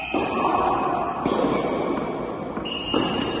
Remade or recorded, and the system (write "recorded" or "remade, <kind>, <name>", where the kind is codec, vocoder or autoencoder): recorded